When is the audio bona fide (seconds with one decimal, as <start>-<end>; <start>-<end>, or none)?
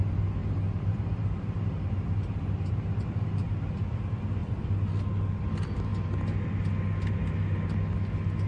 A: 0.0-0.4; 3.5-8.5